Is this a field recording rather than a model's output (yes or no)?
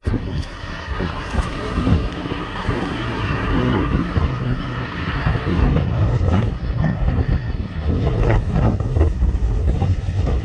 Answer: no